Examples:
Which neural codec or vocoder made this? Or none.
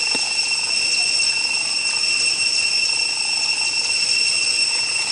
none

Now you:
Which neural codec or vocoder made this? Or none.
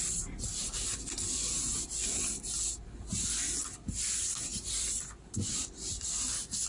none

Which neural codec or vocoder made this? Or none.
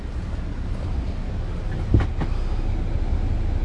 none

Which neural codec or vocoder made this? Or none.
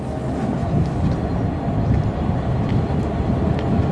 none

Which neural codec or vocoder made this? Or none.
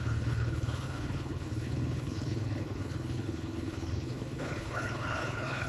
codec, HILCodec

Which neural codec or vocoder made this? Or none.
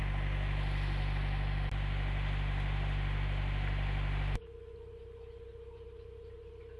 none